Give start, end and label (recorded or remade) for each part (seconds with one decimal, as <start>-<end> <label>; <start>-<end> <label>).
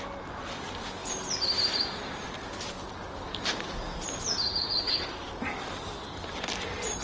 0.0-7.0 recorded